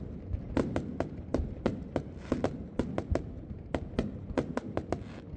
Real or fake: real